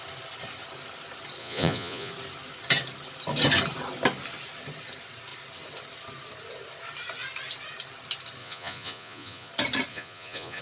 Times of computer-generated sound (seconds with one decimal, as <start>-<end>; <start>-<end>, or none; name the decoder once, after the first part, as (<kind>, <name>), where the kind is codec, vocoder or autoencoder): 1.4-2.1 (vocoder, Vocos); 8.4-9.5; 9.9-10.6